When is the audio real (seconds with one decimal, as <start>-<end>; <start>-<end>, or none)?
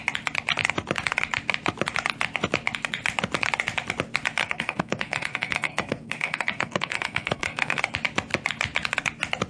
0.0-4.4; 7.8-9.5